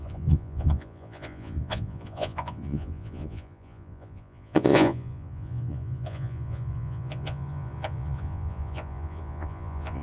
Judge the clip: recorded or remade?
remade